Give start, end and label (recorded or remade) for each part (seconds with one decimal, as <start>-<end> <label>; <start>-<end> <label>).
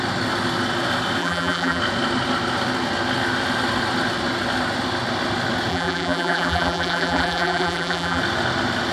0.0-1.2 recorded; 1.2-1.8 remade; 1.8-5.7 recorded; 5.7-8.2 remade; 8.2-8.9 recorded